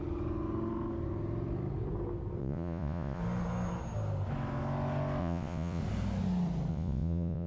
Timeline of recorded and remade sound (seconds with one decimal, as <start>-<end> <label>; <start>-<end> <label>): 0.0-2.4 recorded; 2.4-3.2 remade; 3.2-5.2 recorded; 5.2-5.8 remade; 5.8-6.7 recorded; 6.7-7.5 remade